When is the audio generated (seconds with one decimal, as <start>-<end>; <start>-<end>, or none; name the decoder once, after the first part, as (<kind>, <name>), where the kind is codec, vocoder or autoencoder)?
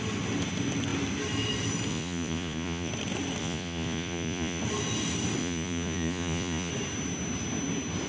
1.9-2.9 (vocoder, Vocos); 3.4-4.6; 5.4-6.7